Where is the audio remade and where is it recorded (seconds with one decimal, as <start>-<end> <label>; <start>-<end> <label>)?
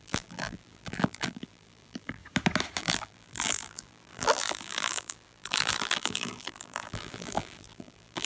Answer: 0.0-2.2 remade; 2.2-2.8 recorded; 2.8-8.3 remade